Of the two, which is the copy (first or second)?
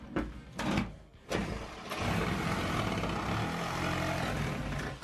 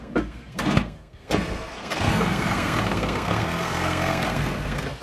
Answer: second